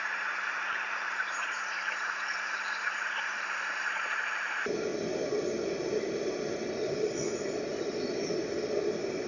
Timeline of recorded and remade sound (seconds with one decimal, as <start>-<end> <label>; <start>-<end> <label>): 0.0-4.9 remade; 4.9-9.3 recorded